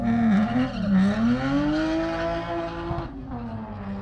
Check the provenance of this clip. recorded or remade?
recorded